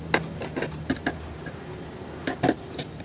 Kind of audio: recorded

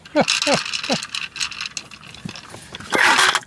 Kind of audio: recorded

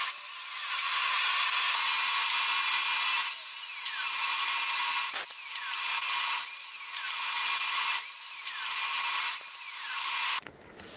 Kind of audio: recorded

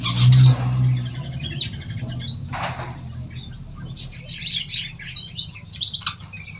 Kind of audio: recorded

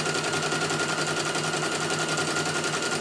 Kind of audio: recorded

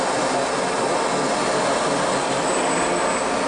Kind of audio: recorded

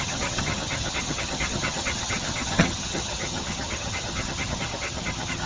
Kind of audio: remade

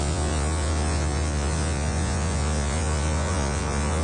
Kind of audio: remade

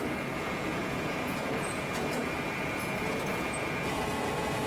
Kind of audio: remade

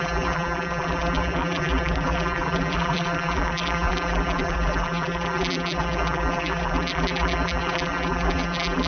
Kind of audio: remade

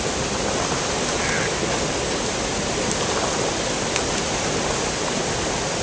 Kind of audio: recorded